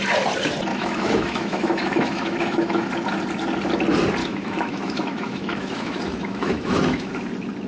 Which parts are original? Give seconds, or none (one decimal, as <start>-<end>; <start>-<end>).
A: 0.0-0.7; 2.9-4.2; 7.1-7.7